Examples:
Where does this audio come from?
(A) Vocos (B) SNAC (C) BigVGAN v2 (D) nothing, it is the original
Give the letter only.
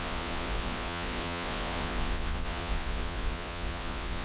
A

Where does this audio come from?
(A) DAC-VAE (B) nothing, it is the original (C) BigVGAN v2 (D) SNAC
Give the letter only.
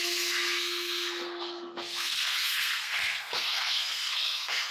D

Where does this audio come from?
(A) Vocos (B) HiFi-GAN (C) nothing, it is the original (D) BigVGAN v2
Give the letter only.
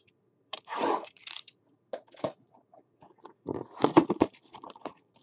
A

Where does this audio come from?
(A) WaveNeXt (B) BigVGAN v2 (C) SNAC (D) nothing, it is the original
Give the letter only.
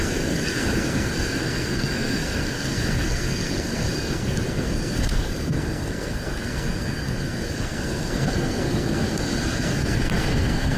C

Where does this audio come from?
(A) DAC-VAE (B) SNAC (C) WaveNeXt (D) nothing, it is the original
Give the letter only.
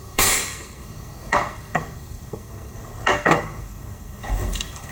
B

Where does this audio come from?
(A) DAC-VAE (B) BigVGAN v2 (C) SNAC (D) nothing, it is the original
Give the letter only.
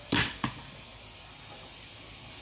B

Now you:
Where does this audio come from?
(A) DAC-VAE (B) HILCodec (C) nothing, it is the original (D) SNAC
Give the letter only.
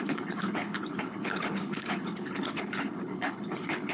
B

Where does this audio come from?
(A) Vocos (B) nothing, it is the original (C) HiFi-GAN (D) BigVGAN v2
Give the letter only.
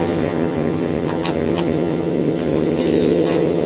C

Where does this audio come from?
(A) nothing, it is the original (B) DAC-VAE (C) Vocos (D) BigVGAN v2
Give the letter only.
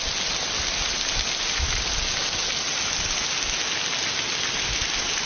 A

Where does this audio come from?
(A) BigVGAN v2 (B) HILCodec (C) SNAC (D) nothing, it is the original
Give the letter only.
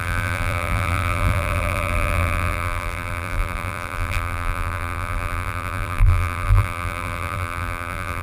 A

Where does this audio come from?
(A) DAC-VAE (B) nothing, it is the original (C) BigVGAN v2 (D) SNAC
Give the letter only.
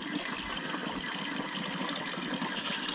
B